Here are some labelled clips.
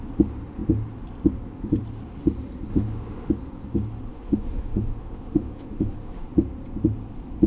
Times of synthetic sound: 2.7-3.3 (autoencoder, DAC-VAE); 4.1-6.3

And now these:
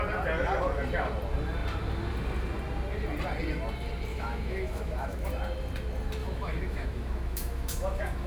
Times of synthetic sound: 4.1-5.3 (autoencoder, DAC-VAE); 6.2-8.3

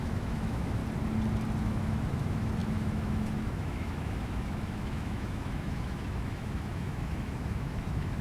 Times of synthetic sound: 0.0-0.8 (autoencoder, DAC-VAE); 1.6-8.2

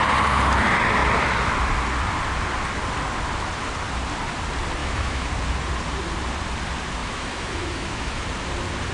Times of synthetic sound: 4.8-5.3 (autoencoder, DAC-VAE); 7.0-8.2

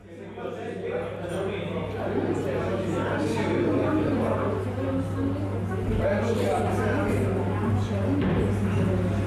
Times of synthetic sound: none

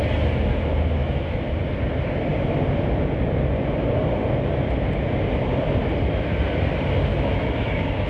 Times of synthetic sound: 1.0-1.5 (autoencoder, DAC-VAE); 7.1-8.1

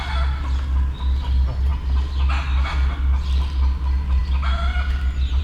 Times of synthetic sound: none

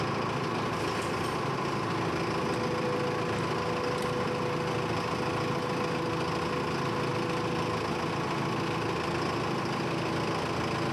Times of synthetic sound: none